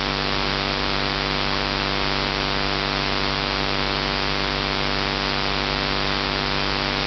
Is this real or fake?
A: real